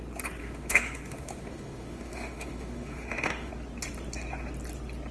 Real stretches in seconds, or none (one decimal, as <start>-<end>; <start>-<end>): 0.0-0.4; 3.5-5.1

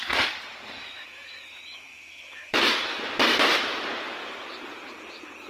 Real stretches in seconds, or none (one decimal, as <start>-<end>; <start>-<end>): 0.0-0.8; 3.0-5.5

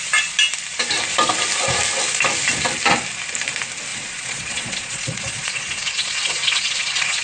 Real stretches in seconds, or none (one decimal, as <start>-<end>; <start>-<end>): 0.0-3.9

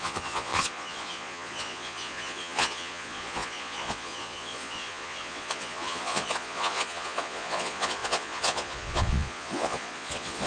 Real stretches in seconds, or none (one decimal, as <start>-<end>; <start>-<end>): none

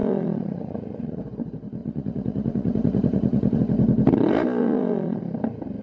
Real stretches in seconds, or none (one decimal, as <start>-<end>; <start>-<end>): 1.2-1.8; 3.6-4.6; 5.2-5.8

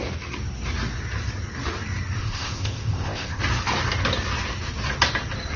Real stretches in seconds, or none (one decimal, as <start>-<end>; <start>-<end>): 0.0-2.2; 3.4-5.6

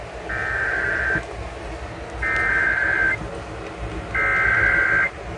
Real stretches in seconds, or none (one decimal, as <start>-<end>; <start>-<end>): 0.0-5.4

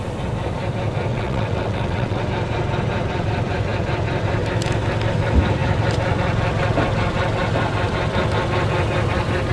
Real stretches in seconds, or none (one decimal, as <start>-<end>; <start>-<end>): 0.0-1.1; 2.2-9.5